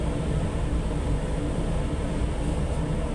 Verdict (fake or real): fake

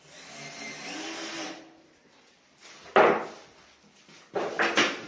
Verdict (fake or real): fake